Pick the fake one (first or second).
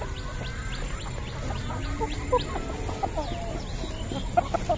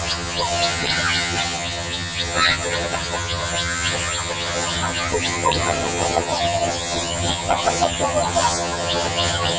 second